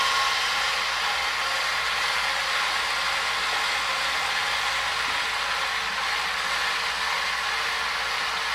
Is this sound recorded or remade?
recorded